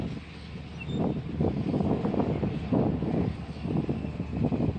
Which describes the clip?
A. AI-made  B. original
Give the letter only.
B